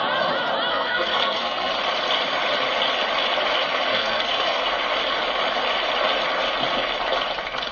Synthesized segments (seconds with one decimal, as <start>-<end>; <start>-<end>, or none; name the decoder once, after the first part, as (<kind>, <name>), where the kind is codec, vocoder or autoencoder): 0.7-1.7 (codec, SNAC); 3.9-4.6